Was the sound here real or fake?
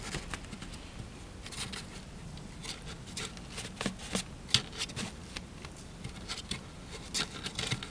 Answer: real